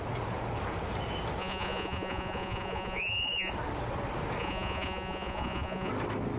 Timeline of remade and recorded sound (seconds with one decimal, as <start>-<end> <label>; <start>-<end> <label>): 0.0-1.4 recorded; 1.4-3.5 remade; 3.5-4.4 recorded; 4.4-5.9 remade; 5.9-6.4 recorded